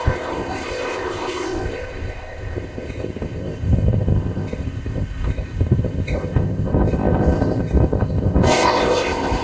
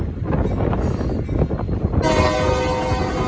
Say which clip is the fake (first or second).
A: first